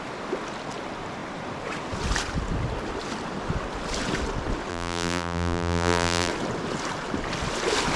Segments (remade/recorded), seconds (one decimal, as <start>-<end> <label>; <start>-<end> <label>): 0.0-4.7 recorded; 4.7-6.3 remade; 6.3-8.0 recorded